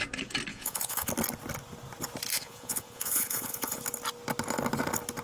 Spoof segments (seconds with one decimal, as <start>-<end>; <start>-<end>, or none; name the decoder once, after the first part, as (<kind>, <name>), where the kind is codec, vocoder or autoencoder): 0.5-1.1 (vocoder, Vocos); 2.3-3.8